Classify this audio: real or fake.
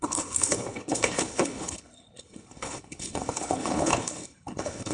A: fake